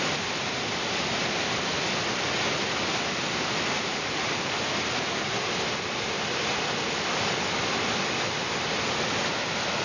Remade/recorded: recorded